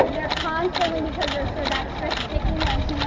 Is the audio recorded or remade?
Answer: recorded